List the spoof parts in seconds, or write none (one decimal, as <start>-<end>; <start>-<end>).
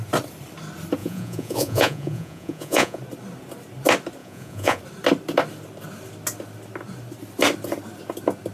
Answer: 1.0-3.0; 4.2-4.8